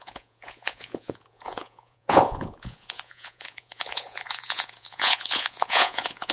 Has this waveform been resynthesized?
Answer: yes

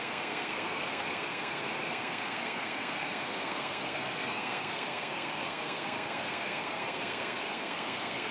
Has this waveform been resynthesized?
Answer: yes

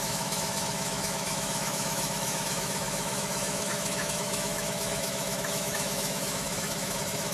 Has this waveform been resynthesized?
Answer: yes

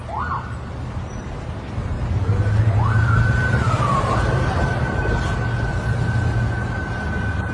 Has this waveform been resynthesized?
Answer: no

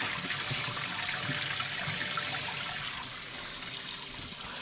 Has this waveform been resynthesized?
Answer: no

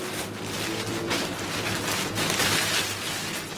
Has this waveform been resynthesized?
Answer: no